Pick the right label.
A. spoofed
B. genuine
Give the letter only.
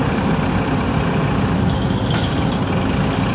B